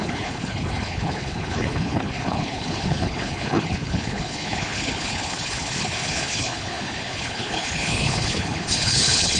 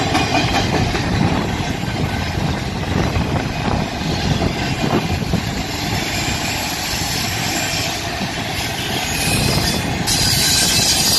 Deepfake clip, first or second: first